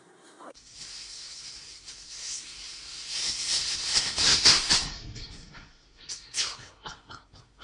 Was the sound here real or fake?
fake